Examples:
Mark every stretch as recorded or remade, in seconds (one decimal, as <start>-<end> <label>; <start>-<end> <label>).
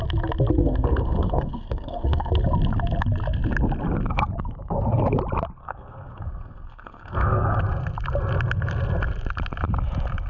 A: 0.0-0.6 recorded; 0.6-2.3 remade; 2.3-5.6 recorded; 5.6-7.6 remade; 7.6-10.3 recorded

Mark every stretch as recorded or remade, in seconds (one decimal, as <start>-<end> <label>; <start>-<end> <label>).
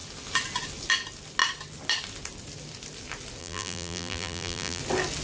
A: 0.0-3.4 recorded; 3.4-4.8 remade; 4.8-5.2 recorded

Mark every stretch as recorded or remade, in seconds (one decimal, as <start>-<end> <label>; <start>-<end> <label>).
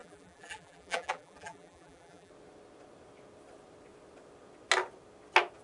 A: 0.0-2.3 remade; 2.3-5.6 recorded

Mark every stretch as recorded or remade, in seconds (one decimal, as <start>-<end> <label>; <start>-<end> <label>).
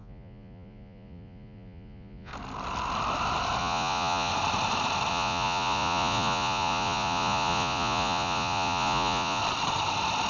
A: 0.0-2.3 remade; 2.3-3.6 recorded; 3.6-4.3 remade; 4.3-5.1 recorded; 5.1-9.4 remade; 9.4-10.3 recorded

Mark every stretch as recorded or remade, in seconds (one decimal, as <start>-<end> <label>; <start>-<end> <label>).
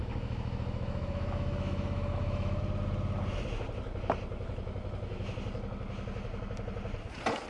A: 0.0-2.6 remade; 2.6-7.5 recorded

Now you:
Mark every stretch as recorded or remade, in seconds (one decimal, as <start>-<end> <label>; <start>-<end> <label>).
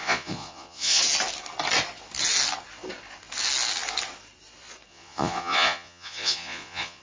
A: 0.0-1.0 remade; 1.0-4.9 recorded; 4.9-7.0 remade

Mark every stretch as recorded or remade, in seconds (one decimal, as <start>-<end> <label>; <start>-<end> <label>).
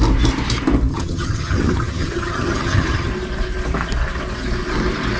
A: 0.0-0.9 recorded; 0.9-3.1 remade; 3.1-5.2 recorded